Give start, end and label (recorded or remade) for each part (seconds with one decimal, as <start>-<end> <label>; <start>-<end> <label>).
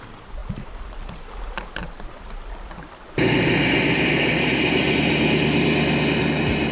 0.0-6.7 recorded